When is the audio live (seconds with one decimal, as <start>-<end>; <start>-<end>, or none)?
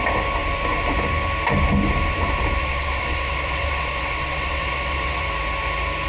0.0-2.6; 5.2-6.1